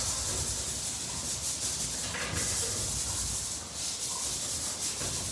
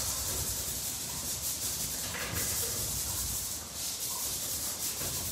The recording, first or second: first